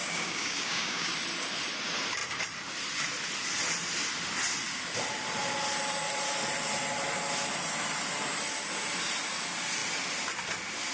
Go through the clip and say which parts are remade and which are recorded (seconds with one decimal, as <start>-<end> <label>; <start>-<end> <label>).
0.0-1.1 remade; 1.1-10.9 recorded